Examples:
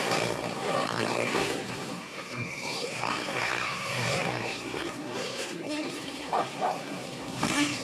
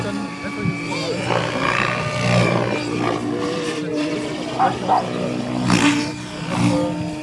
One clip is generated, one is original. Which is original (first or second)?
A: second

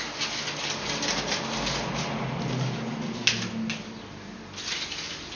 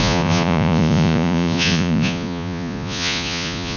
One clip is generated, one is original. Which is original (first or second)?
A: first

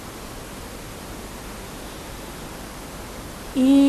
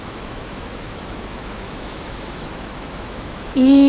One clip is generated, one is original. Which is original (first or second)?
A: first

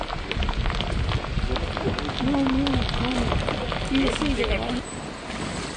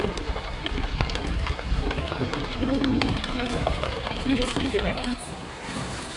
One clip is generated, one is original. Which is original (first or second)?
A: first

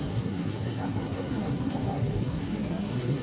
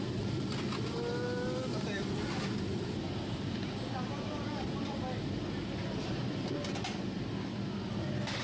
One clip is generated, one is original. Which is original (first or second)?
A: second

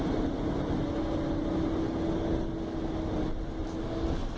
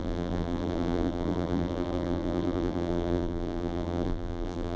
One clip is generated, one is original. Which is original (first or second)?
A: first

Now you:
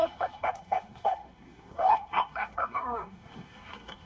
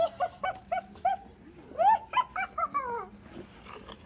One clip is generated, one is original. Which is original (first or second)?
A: second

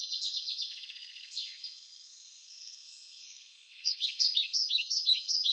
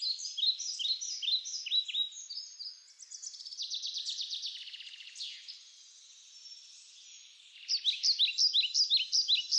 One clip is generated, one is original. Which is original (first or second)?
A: second